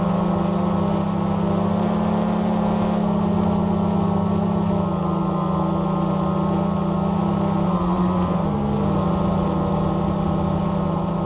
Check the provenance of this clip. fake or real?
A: real